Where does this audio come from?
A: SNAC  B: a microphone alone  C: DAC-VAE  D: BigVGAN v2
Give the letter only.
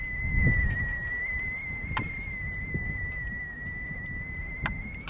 B